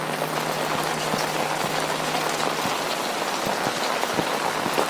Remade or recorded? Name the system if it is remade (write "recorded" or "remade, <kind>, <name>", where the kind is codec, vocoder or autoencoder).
recorded